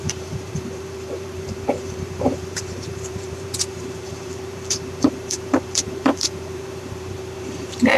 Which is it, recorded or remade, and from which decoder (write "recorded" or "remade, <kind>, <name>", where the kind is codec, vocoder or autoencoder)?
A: remade, vocoder, BigVGAN v2